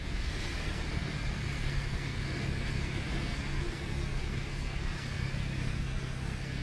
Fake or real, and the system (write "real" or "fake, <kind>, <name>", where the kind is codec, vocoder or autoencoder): fake, codec, SNAC